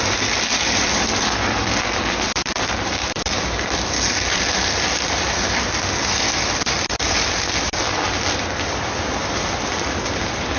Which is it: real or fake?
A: fake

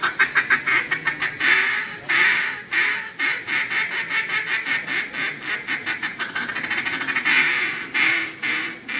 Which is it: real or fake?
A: real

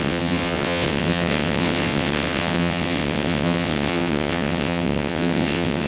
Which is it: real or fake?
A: fake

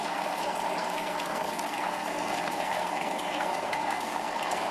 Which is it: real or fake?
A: fake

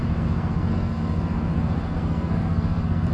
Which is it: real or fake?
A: fake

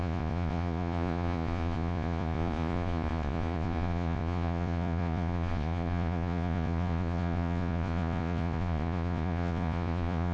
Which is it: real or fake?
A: fake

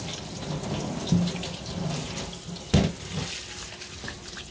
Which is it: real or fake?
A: real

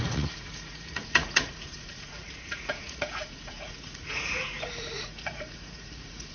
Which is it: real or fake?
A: fake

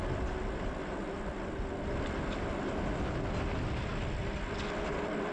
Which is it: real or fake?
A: real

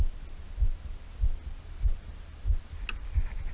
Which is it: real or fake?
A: real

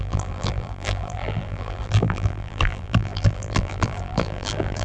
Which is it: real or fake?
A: fake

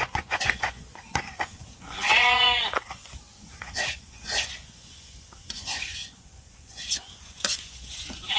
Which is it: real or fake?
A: fake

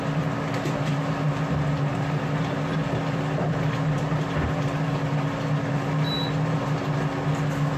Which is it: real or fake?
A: fake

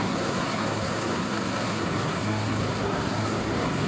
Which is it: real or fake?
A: fake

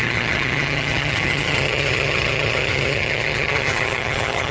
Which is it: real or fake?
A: fake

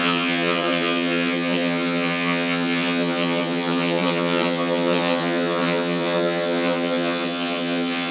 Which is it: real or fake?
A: fake